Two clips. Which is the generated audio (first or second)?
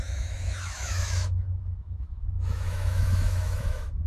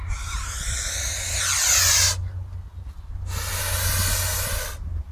first